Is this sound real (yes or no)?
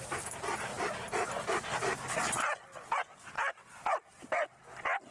yes